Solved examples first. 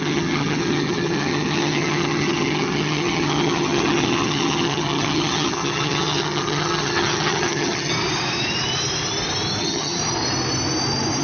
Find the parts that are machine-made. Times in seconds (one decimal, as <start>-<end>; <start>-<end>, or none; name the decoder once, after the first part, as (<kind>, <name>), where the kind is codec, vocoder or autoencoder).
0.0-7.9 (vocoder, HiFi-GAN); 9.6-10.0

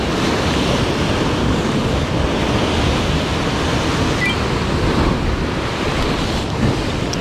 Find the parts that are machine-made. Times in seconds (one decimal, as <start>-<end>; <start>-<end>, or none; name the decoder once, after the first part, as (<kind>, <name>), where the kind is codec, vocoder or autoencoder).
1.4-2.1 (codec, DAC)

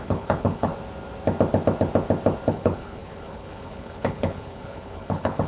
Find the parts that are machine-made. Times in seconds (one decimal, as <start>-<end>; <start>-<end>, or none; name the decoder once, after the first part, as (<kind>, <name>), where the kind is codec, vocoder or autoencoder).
0.0-0.7 (codec, HILCodec); 2.5-5.5

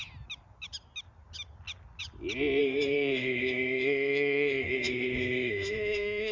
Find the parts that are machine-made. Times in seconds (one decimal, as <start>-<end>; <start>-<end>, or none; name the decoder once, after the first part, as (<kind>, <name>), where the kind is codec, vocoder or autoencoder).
2.6-6.3 (autoencoder, DAC-VAE)

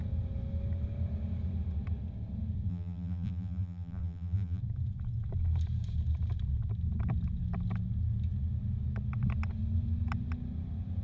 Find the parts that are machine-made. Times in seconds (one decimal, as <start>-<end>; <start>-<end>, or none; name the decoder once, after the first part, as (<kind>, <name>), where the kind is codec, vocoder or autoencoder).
2.7-4.6 (vocoder, BigVGAN v2)